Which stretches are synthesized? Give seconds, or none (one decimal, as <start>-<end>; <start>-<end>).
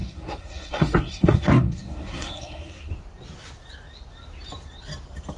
0.0-2.9